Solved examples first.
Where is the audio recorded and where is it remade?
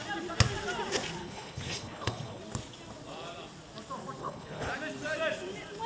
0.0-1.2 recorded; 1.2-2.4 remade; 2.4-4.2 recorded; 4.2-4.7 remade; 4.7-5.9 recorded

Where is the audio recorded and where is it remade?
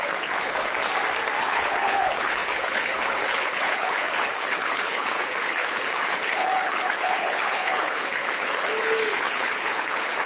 0.0-0.8 remade; 0.8-1.4 recorded; 1.4-10.3 remade